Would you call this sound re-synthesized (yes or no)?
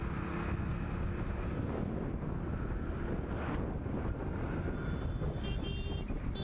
no